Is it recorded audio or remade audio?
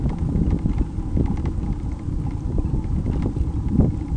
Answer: recorded